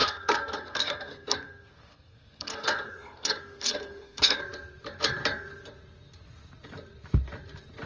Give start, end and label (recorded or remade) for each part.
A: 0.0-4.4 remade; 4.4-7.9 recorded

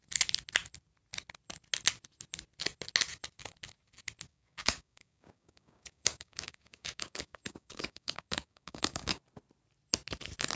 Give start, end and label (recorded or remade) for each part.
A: 0.0-4.3 recorded; 4.3-9.2 remade; 9.2-10.6 recorded

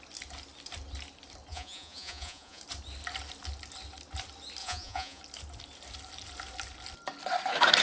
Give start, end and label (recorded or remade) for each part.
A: 0.0-1.5 recorded; 1.5-2.6 remade; 2.6-4.6 recorded; 4.6-5.2 remade; 5.2-7.8 recorded

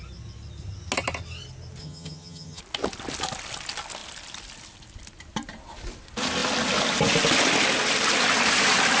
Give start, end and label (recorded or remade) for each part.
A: 0.0-1.8 recorded; 1.8-2.6 remade; 2.6-9.0 recorded

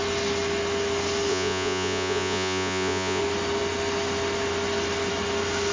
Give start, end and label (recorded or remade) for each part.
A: 0.0-1.3 recorded; 1.3-3.2 remade; 3.2-5.7 recorded

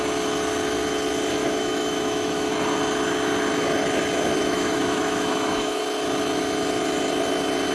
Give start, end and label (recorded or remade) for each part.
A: 0.0-1.4 recorded; 1.4-2.5 remade; 2.5-4.4 recorded; 4.4-5.8 remade; 5.8-7.7 recorded